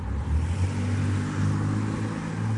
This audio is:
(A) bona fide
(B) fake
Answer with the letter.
A